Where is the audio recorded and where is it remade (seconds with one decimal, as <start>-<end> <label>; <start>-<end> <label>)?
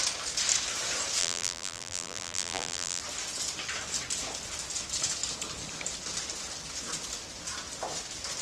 0.0-1.2 recorded; 1.2-3.0 remade; 3.0-8.4 recorded